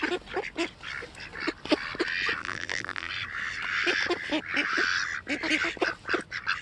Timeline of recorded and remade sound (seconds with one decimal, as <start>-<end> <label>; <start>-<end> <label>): 0.0-2.4 recorded; 2.4-3.1 remade; 3.1-6.6 recorded

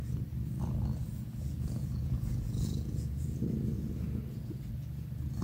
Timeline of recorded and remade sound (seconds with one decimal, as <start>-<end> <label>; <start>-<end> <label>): 0.0-1.0 recorded; 1.0-3.9 remade; 3.9-5.4 recorded